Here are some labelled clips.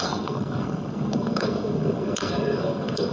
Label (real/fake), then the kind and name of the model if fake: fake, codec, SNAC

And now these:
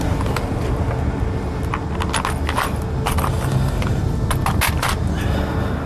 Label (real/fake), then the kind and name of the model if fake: real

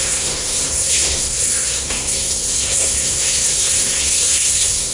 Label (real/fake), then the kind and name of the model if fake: fake, codec, SNAC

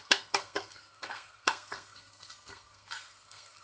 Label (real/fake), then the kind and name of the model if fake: fake, codec, SNAC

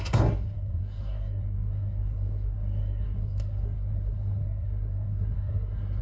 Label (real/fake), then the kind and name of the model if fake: fake, codec, SNAC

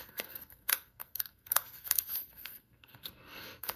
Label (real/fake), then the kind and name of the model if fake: fake, codec, SNAC